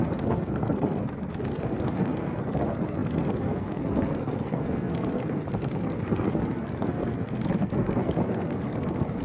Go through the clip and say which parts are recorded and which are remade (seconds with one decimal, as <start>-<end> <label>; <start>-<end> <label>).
0.0-9.2 remade